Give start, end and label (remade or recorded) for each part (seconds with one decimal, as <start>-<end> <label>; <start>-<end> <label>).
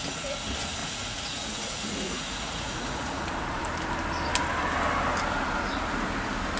0.0-0.8 recorded; 0.8-3.2 remade; 3.2-6.6 recorded